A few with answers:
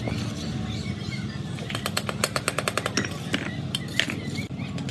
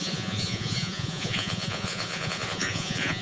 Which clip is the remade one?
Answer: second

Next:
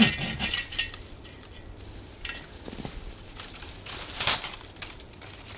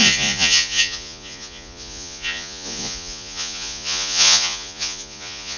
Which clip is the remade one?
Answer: second